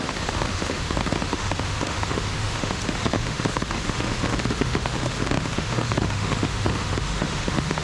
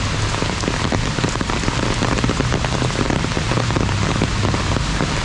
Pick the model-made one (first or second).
first